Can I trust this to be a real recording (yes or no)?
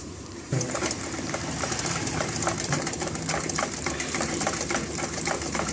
no